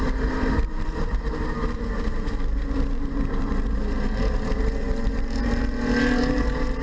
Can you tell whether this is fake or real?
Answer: fake